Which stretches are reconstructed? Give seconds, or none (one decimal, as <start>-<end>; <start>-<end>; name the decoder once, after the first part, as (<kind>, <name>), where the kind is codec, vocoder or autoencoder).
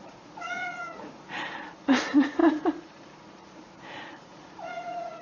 0.0-5.2 (vocoder, Vocos)